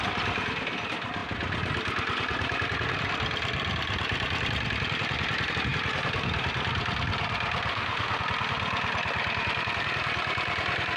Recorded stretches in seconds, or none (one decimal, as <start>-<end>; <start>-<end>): 0.0-7.7; 8.2-11.0